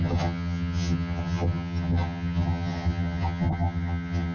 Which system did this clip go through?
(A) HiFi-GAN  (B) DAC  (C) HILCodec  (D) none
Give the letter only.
A